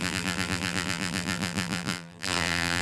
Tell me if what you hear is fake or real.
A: fake